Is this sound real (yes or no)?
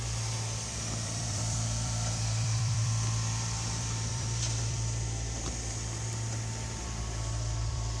no